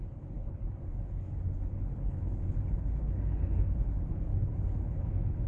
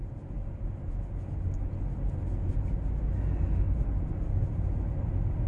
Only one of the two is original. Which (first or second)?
second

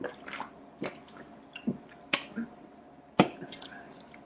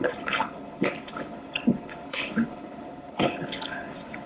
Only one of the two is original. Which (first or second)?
first